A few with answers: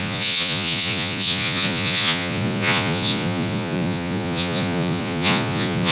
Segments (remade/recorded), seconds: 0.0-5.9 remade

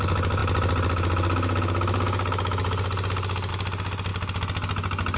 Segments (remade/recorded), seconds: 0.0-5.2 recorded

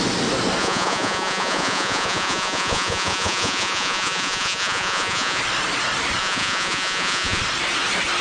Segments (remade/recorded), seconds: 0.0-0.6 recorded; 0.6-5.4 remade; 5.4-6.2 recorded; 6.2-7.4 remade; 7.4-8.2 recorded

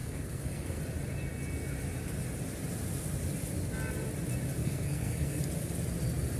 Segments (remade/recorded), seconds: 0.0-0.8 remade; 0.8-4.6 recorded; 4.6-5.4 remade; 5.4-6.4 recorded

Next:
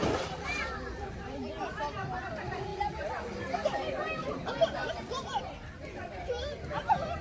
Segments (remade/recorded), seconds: 0.0-2.7 remade; 2.7-4.9 recorded; 4.9-7.2 remade

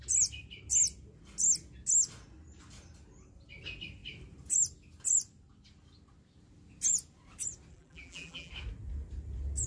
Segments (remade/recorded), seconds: 0.0-7.7 recorded; 7.7-8.5 remade; 8.5-9.7 recorded